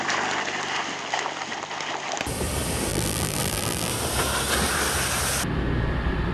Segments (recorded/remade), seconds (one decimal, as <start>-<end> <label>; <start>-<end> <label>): 0.0-2.9 recorded; 2.9-3.9 remade; 3.9-6.3 recorded